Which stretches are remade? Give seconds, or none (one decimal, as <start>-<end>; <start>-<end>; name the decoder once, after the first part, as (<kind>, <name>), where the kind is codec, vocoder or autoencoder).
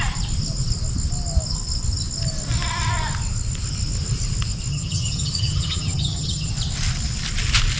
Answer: 4.7-6.5 (vocoder, HiFi-GAN)